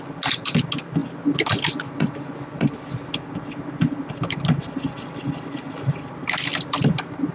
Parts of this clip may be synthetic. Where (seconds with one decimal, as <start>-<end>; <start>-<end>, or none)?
none